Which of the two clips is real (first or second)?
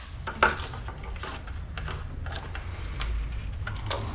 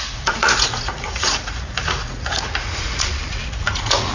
first